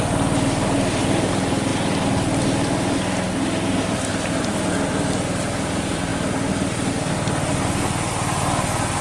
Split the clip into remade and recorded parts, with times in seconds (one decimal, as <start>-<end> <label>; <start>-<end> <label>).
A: 0.0-9.0 recorded